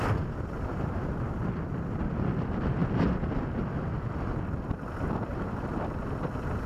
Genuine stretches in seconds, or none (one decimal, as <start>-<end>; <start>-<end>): 0.0-6.7